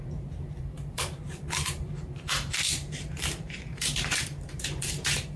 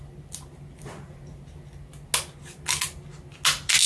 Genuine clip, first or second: second